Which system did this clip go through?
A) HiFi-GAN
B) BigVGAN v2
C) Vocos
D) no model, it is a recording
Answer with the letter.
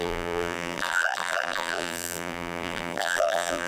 B